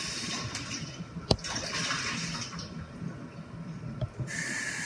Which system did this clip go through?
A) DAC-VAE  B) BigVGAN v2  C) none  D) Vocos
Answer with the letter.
C